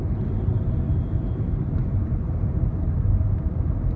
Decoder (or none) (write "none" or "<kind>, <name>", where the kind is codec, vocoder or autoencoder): none